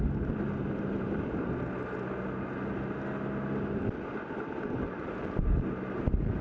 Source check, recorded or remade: recorded